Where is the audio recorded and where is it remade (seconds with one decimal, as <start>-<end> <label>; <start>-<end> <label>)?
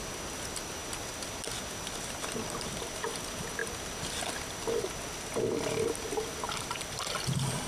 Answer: 0.0-7.7 recorded